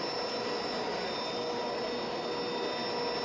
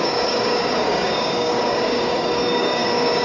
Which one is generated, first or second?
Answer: second